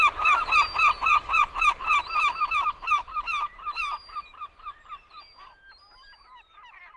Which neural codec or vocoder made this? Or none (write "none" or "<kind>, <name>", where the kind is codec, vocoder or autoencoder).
vocoder, BigVGAN v2